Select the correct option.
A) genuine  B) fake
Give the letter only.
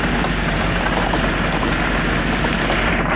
A